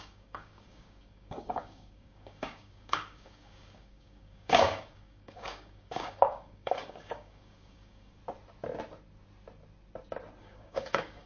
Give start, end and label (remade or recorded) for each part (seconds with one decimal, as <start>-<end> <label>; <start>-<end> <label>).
0.0-8.2 remade; 8.2-10.4 recorded; 10.4-11.3 remade